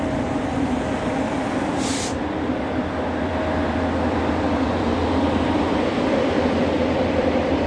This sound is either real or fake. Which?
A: fake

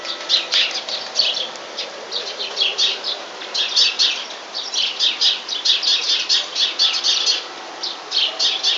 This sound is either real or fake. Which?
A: real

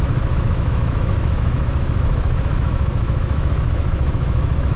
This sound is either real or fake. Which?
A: fake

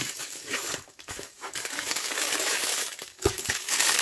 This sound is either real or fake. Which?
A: fake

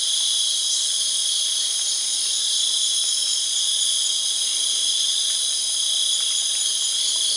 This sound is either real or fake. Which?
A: real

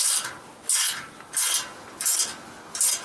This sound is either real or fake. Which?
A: real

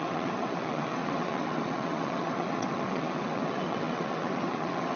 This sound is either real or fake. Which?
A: fake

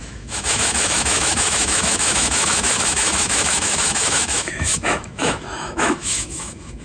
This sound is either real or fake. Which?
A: fake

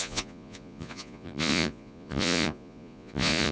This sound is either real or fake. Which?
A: fake